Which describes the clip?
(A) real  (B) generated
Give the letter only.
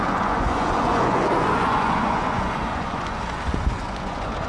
B